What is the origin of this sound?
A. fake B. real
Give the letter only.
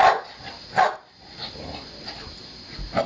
B